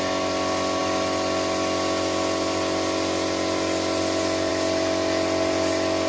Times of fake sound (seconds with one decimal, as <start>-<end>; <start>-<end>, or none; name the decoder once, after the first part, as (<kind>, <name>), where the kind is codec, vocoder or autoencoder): none